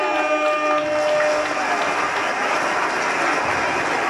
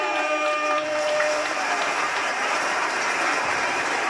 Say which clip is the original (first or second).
first